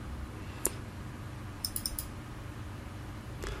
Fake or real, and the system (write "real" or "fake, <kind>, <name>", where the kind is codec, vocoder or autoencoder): real